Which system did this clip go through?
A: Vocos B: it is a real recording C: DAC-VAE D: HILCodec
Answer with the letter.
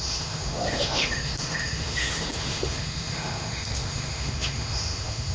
C